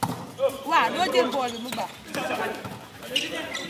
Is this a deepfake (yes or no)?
no